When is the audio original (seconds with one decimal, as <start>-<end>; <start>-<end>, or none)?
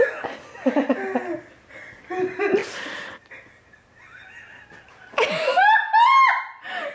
0.0-2.6; 3.3-6.9